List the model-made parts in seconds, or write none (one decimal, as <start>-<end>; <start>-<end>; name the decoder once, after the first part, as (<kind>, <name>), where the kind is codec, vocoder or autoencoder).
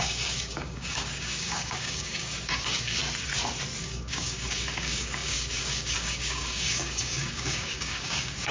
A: 0.0-3.0 (codec, DAC); 3.8-8.5